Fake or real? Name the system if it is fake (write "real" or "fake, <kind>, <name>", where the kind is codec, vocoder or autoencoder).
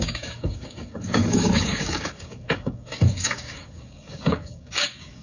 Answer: fake, codec, DAC